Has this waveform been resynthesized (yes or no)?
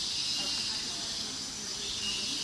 no